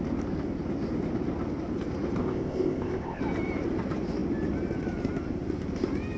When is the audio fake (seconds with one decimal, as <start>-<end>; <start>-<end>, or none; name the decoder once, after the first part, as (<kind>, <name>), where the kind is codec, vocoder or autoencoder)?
2.2-3.2 (codec, ZipCodec)